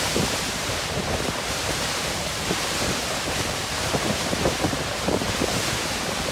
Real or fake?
fake